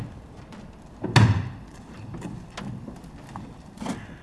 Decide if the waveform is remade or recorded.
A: recorded